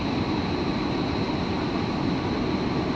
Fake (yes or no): no